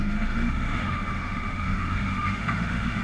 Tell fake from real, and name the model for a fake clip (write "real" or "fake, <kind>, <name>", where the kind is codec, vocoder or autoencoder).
fake, autoencoder, DAC-VAE